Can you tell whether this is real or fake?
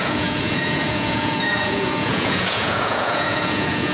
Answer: fake